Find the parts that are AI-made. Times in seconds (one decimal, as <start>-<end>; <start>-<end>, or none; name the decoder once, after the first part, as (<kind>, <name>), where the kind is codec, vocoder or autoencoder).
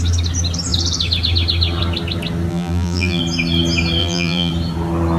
2.5-3.2 (vocoder, BigVGAN v2); 4.0-4.5